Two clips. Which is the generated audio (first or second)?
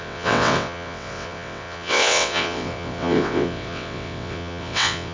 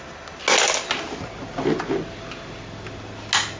first